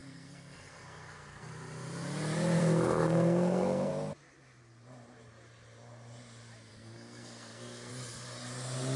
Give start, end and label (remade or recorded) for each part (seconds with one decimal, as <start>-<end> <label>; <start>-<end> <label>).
0.0-1.5 remade; 1.5-2.6 recorded; 2.6-3.9 remade; 3.9-6.7 recorded; 6.7-7.9 remade; 7.9-9.0 recorded